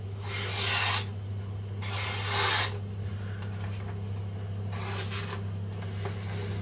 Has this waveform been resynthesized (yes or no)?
no